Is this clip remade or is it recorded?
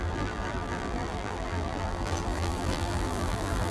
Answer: remade